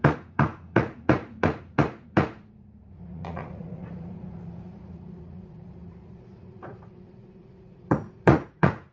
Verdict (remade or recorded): remade